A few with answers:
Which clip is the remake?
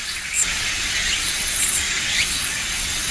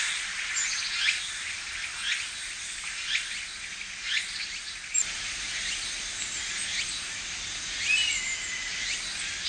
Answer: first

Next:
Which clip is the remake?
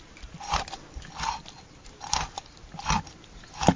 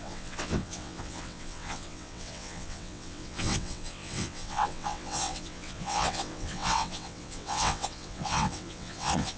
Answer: second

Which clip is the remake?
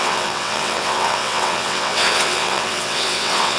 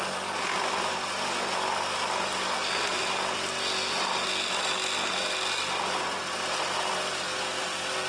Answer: first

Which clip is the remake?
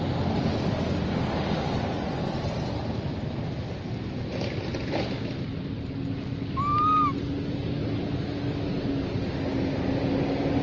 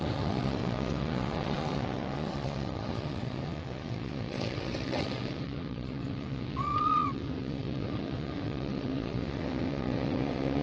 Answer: second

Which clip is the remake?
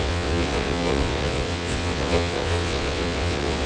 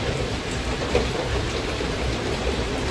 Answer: first